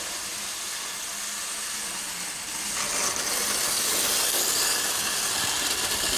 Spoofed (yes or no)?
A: no